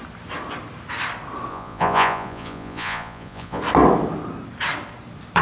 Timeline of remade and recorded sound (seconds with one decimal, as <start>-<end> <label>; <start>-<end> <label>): 0.0-1.5 recorded; 1.5-3.6 remade; 3.6-5.4 recorded